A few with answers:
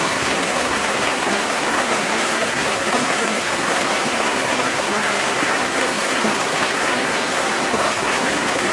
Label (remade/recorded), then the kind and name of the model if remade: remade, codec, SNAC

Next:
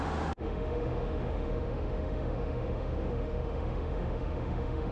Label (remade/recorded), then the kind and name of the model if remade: remade, autoencoder, DAC-VAE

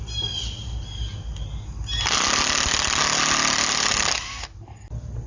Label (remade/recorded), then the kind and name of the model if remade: recorded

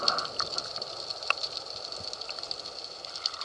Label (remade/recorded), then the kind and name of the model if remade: remade, vocoder, BigVGAN v2